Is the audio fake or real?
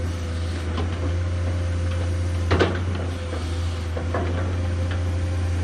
real